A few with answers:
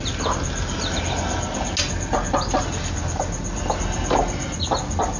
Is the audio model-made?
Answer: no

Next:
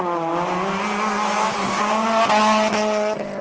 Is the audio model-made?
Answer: no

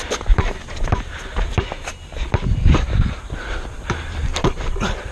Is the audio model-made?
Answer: no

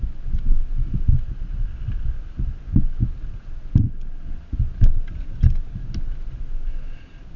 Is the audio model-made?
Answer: no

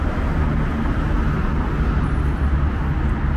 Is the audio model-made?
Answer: no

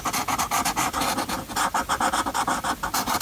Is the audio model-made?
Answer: no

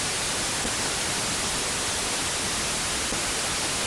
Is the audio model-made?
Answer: no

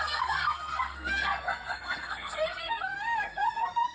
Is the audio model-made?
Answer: yes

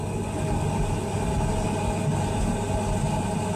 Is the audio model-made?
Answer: no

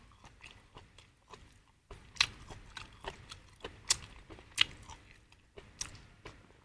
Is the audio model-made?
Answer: no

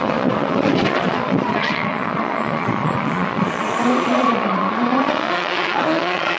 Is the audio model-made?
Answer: yes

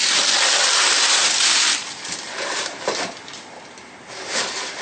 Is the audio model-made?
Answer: yes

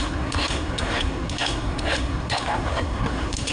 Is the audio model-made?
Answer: yes